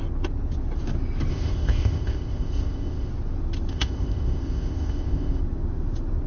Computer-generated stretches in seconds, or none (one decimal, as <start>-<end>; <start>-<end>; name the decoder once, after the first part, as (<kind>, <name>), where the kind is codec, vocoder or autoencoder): 1.3-3.1 (codec, ZipCodec); 3.7-5.4